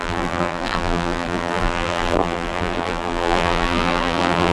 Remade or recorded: remade